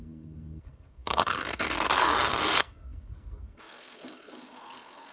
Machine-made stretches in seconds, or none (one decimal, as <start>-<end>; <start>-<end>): 0.0-5.1